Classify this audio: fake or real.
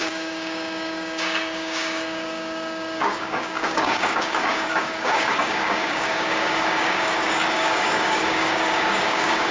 fake